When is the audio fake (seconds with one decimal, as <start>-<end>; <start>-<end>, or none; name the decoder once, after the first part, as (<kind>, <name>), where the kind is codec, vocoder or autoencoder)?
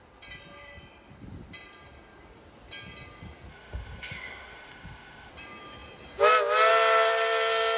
3.5-5.3 (autoencoder, DAC-VAE)